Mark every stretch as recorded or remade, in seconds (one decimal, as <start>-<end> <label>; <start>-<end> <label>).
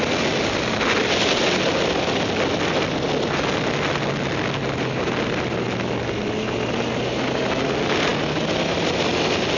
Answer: 0.0-9.6 recorded